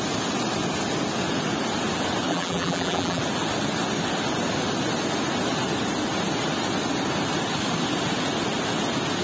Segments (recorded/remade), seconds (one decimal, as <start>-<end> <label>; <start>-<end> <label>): 0.0-2.3 recorded; 2.3-3.2 remade; 3.2-9.2 recorded